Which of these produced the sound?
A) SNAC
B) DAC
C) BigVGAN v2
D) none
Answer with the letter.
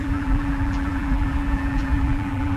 C